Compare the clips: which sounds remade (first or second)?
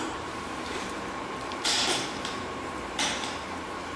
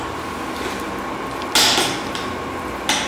first